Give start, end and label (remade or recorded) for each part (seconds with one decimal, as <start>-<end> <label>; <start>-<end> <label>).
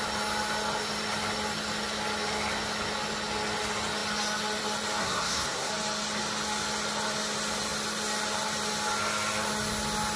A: 0.0-5.0 recorded; 5.0-5.7 remade; 5.7-10.2 recorded